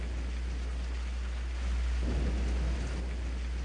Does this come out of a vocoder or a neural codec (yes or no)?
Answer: no